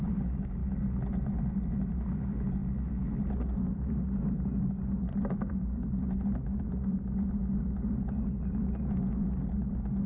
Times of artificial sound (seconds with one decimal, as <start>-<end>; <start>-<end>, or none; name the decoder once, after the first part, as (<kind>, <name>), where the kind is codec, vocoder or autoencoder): none